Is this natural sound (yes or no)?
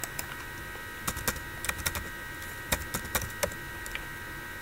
yes